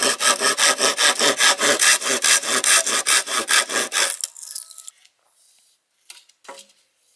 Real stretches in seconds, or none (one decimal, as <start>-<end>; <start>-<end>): 0.0-7.2